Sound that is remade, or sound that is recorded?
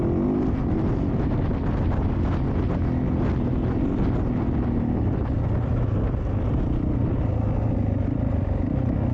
recorded